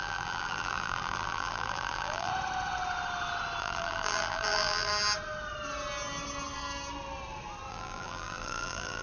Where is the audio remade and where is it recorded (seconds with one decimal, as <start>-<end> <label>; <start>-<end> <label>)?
0.0-2.3 remade; 2.3-3.6 recorded; 3.6-4.9 remade; 4.9-7.7 recorded; 7.7-9.0 remade